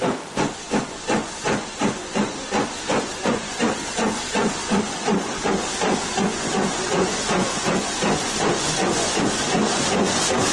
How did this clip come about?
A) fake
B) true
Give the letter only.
A